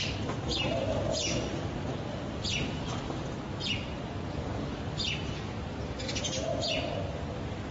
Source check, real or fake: real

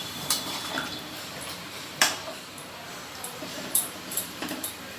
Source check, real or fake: fake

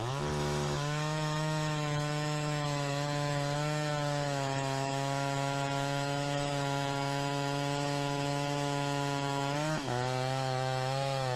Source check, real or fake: fake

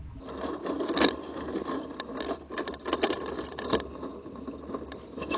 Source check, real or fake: real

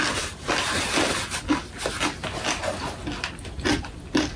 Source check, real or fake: real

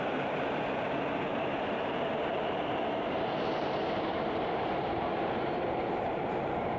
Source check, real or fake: fake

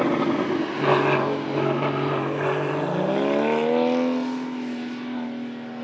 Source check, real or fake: real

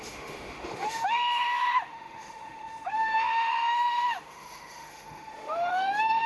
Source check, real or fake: fake